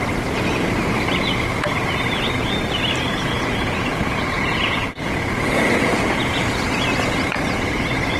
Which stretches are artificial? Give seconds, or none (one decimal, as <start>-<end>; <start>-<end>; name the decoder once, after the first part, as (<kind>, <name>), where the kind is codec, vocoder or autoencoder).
3.1-5.9 (vocoder, Vocos)